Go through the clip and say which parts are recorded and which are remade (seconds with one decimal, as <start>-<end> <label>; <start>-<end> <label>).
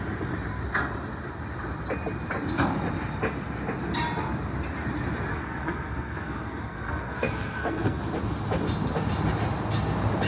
0.0-5.3 recorded; 5.3-8.0 remade; 8.0-10.3 recorded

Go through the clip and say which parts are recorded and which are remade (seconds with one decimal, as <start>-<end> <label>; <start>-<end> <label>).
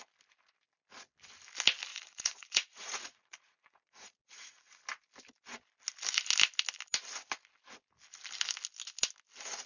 0.0-1.9 recorded; 1.9-4.8 remade; 4.8-9.7 recorded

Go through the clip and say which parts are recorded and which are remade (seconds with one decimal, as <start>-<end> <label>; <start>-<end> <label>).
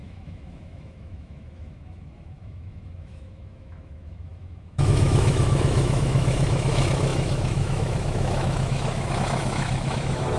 0.0-10.4 remade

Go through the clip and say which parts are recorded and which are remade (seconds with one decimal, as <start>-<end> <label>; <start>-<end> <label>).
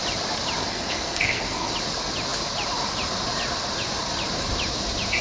0.0-0.6 recorded; 0.6-1.7 remade; 1.7-5.2 recorded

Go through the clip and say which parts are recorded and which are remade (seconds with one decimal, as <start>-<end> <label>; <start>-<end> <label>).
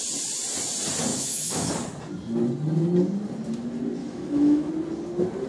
0.0-1.1 recorded; 1.1-1.7 remade; 1.7-4.0 recorded; 4.0-4.7 remade; 4.7-5.5 recorded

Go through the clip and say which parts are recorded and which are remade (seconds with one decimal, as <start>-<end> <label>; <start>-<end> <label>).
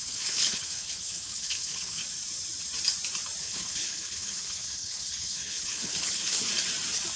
0.0-2.0 remade; 2.0-3.4 recorded; 3.4-6.5 remade; 6.5-7.2 recorded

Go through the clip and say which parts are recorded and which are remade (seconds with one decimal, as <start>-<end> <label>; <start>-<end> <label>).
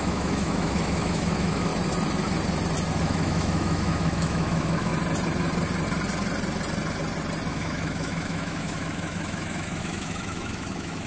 0.0-1.7 remade; 1.7-3.0 recorded; 3.0-4.9 remade; 4.9-7.5 recorded; 7.5-11.1 remade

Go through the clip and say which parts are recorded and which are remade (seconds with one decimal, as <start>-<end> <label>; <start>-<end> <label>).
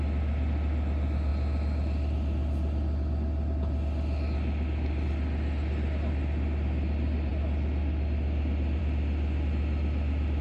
0.0-10.4 recorded